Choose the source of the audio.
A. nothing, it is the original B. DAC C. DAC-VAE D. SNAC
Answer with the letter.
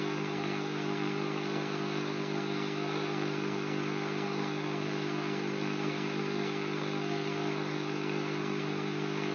D